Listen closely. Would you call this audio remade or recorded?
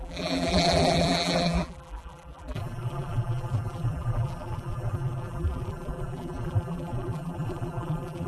remade